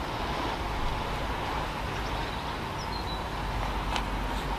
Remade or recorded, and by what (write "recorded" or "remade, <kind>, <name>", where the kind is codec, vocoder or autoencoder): recorded